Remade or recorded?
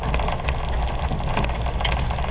recorded